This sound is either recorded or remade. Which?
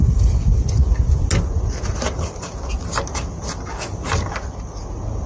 recorded